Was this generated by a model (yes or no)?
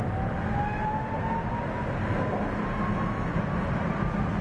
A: no